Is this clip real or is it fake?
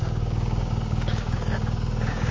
fake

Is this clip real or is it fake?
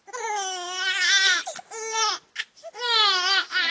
real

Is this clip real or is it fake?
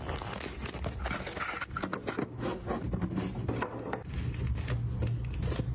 real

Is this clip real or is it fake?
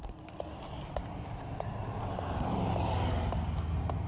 real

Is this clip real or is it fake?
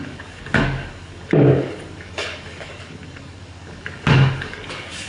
fake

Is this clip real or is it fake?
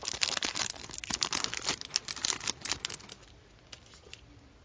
real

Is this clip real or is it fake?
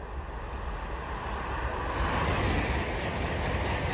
real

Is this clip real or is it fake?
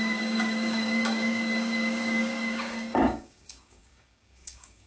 fake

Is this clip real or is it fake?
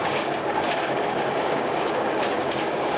fake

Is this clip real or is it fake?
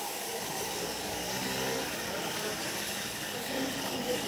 fake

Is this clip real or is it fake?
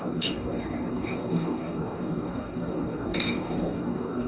fake